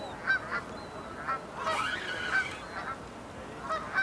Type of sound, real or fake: real